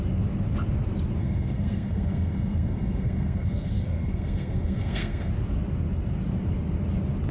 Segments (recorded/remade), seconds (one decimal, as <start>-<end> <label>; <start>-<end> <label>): 0.0-1.2 recorded; 1.2-5.3 remade; 5.3-7.3 recorded